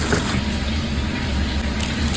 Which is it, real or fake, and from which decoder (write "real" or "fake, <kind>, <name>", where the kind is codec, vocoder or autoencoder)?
real